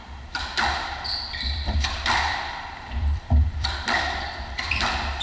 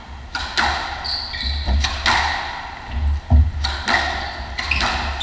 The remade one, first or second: first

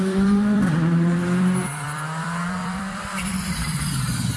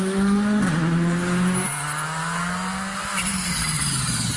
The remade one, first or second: first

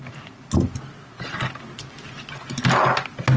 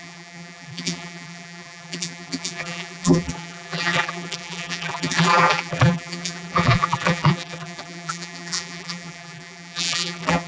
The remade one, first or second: second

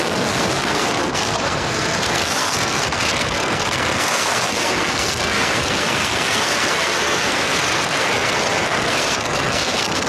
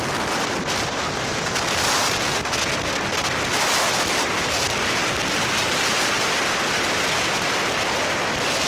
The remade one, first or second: first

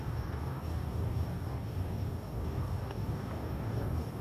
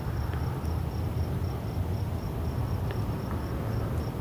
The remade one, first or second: first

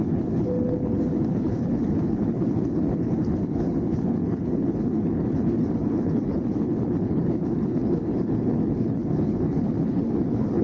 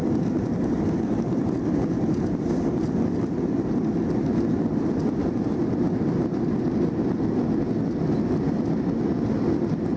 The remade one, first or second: first